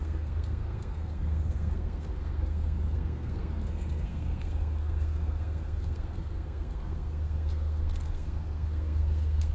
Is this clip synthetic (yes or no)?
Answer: yes